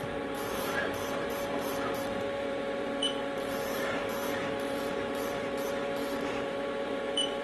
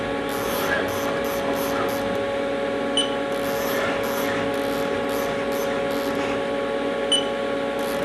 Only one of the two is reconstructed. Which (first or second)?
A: first